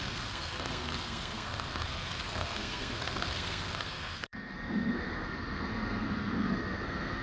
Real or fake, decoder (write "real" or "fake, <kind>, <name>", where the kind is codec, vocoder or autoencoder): fake, codec, SNAC